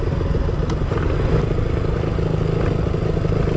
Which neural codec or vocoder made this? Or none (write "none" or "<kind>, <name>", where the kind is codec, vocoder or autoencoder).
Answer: none